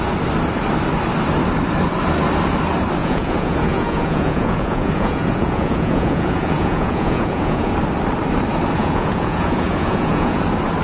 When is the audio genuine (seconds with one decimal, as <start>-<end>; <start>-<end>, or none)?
0.0-3.0; 7.7-8.8; 10.4-10.8